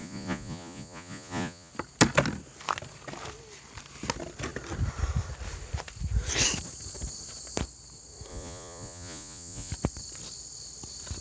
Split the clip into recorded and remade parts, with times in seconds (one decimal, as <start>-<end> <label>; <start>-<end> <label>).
0.0-1.7 remade; 1.7-8.3 recorded; 8.3-9.7 remade; 9.7-11.2 recorded